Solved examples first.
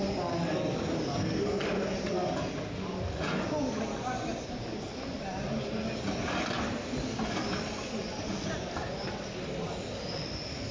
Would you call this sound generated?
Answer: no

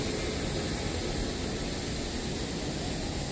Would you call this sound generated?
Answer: no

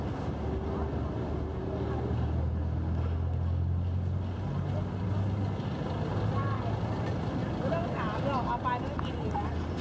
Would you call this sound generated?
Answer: no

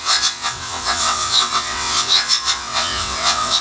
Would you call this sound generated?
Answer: yes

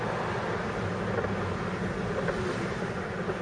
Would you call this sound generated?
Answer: no